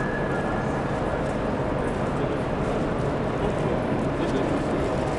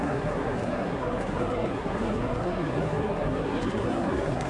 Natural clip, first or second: first